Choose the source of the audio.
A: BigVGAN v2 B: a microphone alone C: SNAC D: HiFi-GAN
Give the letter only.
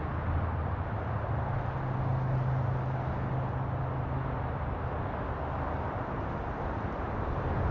B